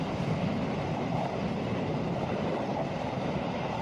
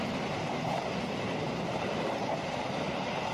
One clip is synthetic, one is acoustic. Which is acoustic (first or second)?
second